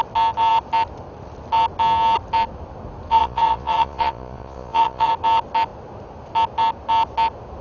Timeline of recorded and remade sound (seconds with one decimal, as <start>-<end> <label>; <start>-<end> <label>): 0.0-3.1 recorded; 3.1-5.1 remade; 5.1-7.6 recorded